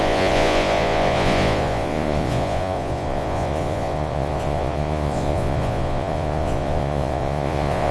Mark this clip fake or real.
fake